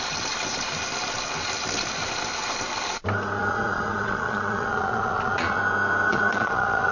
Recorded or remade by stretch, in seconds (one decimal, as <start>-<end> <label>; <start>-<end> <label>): 0.0-3.4 recorded; 3.4-5.6 remade; 5.6-6.1 recorded; 6.1-6.9 remade

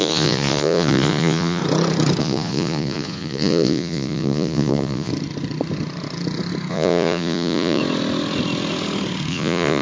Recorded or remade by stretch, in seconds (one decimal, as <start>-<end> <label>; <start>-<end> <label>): 0.0-1.6 remade; 1.6-2.2 recorded; 2.2-5.1 remade; 5.1-6.7 recorded; 6.7-7.8 remade; 7.8-9.3 recorded; 9.3-9.8 remade

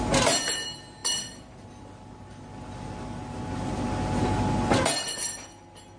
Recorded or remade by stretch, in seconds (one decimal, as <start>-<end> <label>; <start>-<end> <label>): 0.0-6.0 recorded

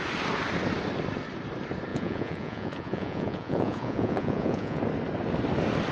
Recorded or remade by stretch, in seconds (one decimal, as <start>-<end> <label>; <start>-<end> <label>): 0.0-1.9 recorded; 1.9-4.8 remade; 4.8-5.9 recorded